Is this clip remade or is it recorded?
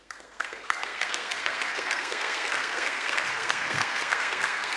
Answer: remade